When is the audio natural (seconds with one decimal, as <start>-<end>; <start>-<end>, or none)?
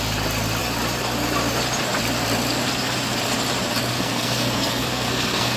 0.0-3.9